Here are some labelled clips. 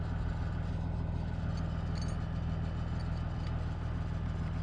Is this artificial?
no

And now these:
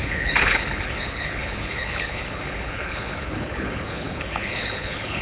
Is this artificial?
yes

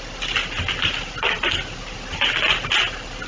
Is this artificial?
no